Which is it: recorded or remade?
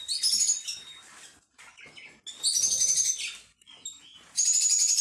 recorded